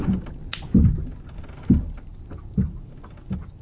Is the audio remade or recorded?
recorded